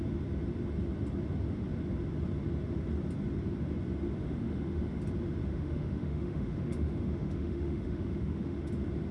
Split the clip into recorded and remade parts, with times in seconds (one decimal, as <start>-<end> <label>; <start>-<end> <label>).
0.0-4.2 recorded; 4.2-5.0 remade; 5.0-5.5 recorded; 5.5-8.7 remade; 8.7-9.1 recorded